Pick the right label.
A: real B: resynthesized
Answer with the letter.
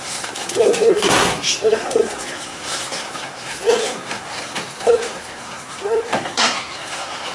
B